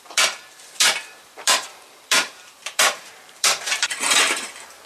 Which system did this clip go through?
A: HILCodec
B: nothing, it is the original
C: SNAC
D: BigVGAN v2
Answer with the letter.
D